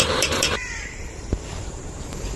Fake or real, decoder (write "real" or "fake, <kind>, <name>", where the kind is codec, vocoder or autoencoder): fake, vocoder, BigVGAN v2